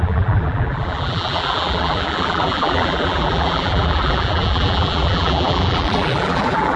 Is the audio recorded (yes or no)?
no